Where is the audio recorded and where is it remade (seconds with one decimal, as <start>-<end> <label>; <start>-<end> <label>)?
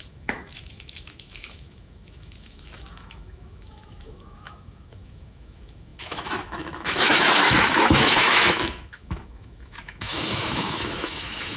0.0-11.6 remade